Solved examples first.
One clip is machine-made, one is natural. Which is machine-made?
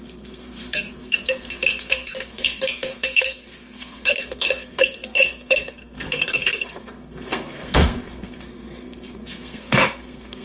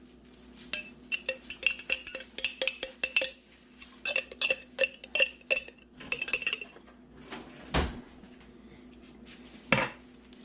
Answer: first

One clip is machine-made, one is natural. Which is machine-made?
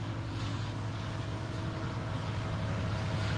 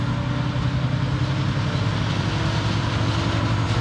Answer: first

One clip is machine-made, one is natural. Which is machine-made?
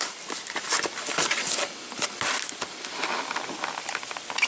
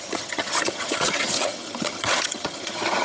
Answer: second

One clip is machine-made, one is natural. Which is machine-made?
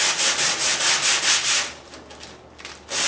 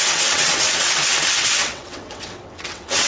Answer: second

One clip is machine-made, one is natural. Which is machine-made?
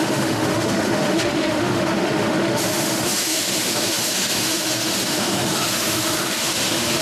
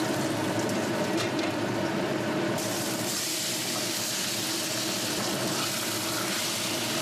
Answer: first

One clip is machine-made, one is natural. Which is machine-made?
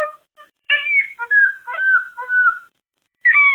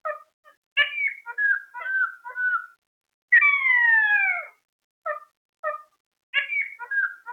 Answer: first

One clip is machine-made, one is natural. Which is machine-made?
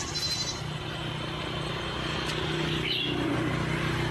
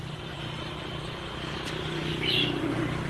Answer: second